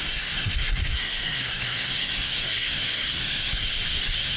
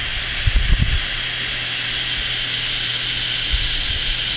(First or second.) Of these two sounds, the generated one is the first